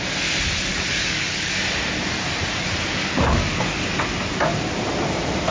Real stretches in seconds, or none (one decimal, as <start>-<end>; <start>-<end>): 0.0-0.7; 1.5-3.0; 3.7-5.5